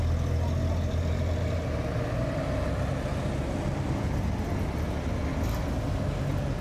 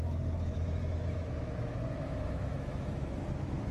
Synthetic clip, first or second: second